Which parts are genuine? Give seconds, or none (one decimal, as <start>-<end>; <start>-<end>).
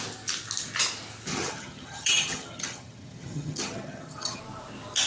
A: 0.0-1.3; 4.4-5.1